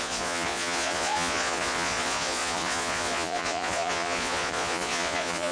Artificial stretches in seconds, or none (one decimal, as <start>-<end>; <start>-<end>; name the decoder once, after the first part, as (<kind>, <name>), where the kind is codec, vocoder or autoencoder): 0.0-5.5 (vocoder, Vocos)